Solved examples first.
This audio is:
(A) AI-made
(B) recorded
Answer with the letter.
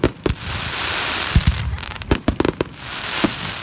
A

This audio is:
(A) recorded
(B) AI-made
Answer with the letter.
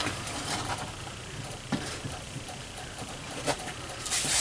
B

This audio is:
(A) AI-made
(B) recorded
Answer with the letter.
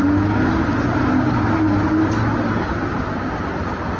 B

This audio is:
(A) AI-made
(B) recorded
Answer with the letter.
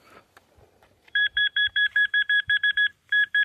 A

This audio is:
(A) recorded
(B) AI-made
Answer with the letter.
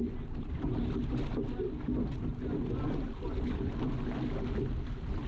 A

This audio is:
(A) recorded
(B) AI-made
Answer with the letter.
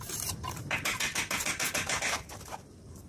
B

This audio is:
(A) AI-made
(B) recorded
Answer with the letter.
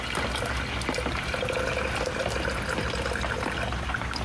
B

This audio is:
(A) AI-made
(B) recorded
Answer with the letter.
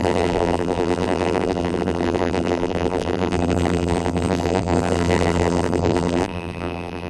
A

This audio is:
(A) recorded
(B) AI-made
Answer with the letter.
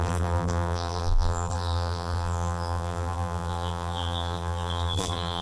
B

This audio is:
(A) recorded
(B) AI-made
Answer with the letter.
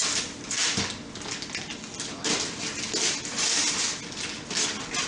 A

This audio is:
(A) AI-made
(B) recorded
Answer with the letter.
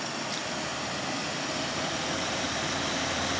A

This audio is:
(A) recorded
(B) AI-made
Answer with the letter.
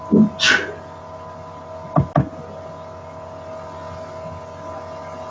A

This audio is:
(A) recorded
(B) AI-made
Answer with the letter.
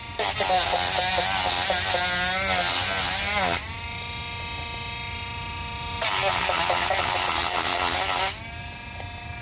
A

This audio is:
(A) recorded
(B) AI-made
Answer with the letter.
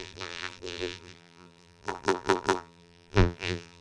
B